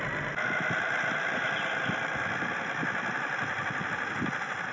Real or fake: real